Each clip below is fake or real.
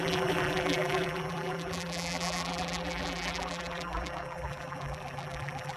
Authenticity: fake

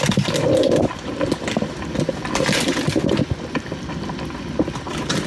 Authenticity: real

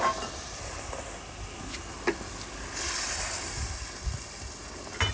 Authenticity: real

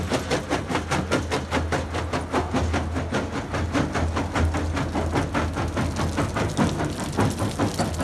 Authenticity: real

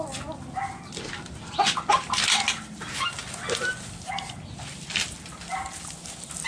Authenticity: real